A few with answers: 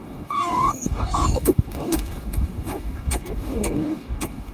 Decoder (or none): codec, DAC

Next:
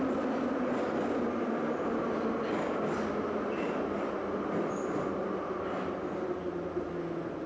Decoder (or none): none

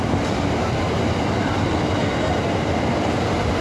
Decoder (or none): none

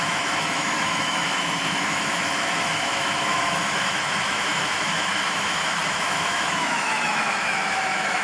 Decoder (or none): autoencoder, DAC-VAE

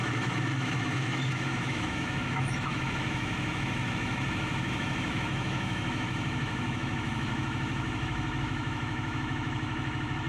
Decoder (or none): autoencoder, DAC-VAE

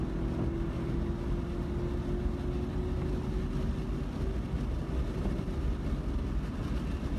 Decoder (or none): none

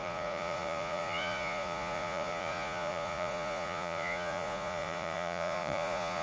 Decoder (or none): vocoder, Vocos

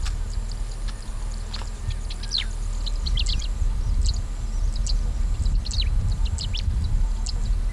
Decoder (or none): none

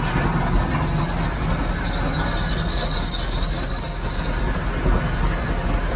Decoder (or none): none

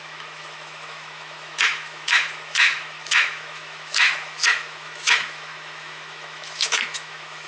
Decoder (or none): autoencoder, DAC-VAE